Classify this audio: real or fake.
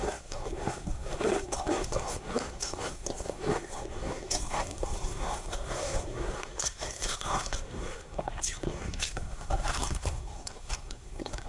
fake